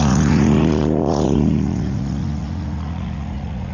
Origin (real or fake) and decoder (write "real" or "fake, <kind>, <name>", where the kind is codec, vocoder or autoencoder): fake, vocoder, Vocos